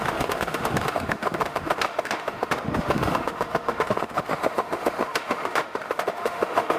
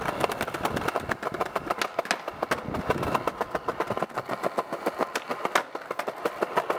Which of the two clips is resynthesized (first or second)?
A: first